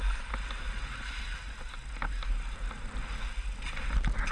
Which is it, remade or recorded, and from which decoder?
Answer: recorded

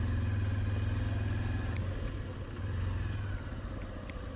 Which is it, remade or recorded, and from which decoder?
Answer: recorded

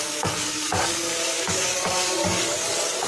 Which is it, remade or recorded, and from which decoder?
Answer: remade, codec, DAC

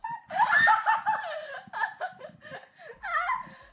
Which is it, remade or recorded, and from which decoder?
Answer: recorded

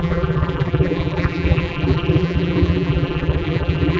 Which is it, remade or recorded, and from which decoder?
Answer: remade, vocoder, BigVGAN v2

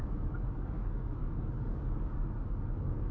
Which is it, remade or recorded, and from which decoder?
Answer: remade, codec, DAC